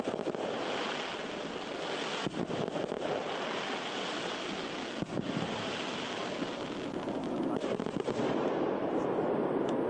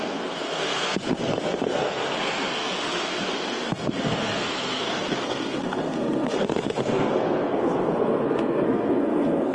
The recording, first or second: first